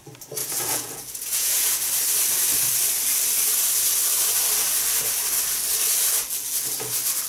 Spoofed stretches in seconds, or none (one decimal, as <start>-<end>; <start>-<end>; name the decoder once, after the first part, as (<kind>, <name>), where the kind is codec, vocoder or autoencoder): 0.4-1.9 (vocoder, Vocos)